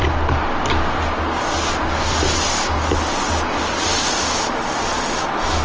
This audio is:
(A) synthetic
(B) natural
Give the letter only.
B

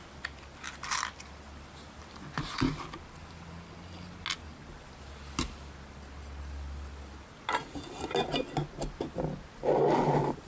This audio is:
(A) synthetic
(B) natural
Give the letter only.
B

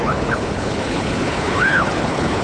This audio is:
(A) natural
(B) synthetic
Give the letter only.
B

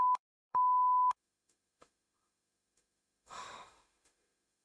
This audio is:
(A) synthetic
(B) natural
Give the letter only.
A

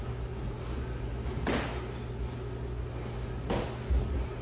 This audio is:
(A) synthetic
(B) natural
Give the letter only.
B